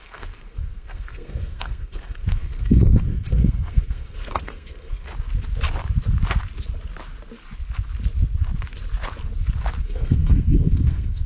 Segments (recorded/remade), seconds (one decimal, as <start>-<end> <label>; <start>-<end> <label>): 0.0-5.1 remade; 5.1-9.8 recorded; 9.8-11.3 remade